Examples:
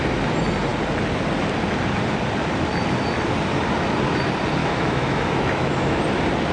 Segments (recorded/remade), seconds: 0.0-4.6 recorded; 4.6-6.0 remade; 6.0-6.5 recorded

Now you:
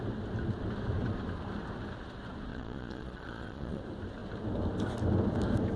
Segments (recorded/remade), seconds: 0.0-2.5 recorded; 2.5-3.8 remade; 3.8-5.8 recorded

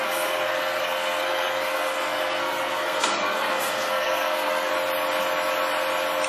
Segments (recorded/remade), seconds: 0.0-4.7 remade; 4.7-6.3 recorded